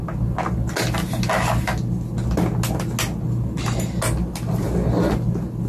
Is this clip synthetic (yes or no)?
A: no